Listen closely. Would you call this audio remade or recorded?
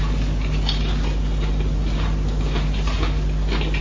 recorded